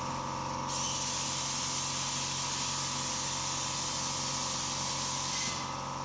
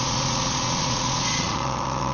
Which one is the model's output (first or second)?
second